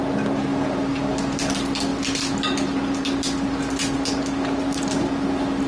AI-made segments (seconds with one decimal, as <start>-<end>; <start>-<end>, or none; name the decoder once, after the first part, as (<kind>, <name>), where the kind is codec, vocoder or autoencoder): none

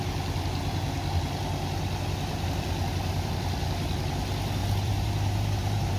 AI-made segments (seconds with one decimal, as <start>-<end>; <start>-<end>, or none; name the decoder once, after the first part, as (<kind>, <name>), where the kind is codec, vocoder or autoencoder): 4.6-6.0 (vocoder, BigVGAN v2)

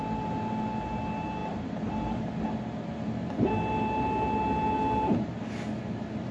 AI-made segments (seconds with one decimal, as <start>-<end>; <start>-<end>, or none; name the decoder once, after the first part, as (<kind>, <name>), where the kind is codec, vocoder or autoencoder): none